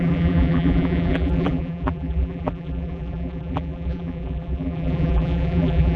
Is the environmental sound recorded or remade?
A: remade